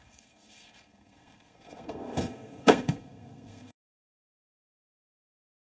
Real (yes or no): no